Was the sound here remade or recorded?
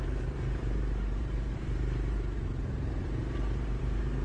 remade